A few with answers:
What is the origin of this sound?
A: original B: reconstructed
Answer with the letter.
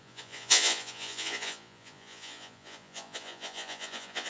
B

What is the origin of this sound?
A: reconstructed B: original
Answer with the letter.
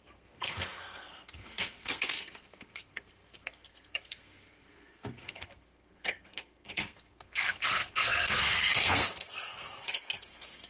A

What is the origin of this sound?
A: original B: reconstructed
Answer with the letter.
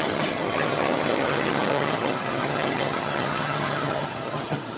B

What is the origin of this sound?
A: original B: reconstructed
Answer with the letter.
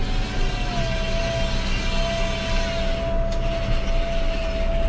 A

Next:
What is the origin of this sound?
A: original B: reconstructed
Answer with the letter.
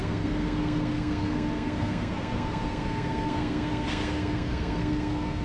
B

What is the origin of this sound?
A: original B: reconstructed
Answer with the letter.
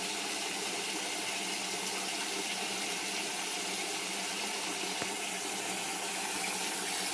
A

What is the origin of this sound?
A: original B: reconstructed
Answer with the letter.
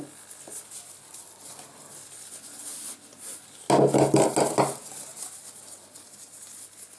A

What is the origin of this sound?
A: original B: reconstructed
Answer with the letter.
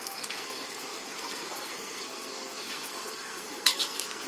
B